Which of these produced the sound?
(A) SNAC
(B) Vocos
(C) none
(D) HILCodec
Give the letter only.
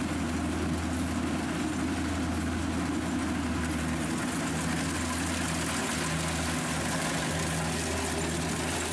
C